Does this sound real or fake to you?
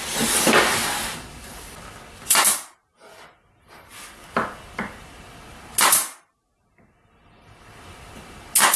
real